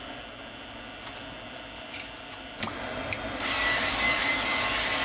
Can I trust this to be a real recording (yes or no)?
yes